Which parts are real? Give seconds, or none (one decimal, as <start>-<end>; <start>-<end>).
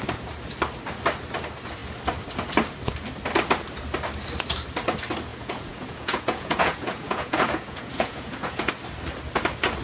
0.0-5.3; 8.7-9.8